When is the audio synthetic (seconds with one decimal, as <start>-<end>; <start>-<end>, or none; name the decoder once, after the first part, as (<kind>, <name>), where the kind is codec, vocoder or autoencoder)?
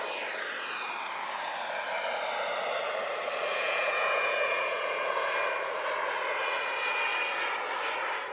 3.5-5.3 (vocoder, Vocos)